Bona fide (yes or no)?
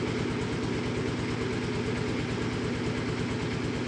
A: yes